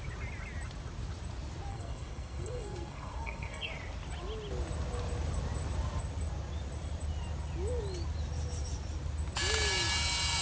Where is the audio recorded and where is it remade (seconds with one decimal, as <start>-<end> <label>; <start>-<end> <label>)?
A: 0.0-1.7 recorded; 1.7-3.7 remade; 3.7-10.4 recorded